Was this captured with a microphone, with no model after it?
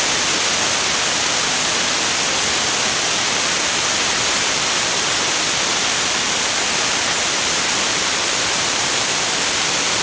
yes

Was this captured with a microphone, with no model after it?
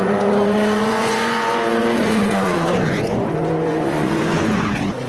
no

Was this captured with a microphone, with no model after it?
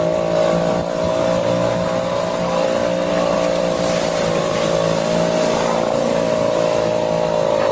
yes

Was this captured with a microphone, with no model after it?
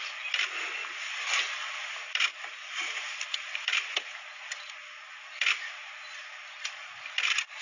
yes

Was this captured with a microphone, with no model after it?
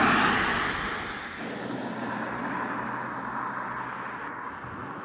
yes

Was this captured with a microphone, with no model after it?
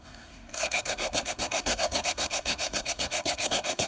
no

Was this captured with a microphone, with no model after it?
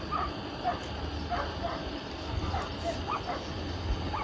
yes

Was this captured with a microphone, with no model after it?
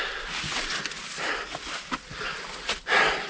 yes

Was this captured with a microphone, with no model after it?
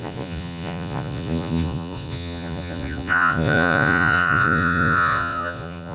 no